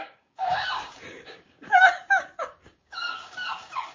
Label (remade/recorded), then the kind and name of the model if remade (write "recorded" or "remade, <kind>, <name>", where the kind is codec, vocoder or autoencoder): remade, codec, DAC